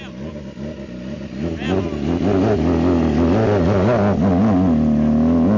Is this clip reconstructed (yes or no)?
no